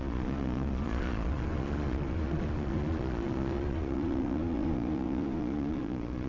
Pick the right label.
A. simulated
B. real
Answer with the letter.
A